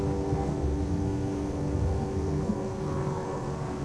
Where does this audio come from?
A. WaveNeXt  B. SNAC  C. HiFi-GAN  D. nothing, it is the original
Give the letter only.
B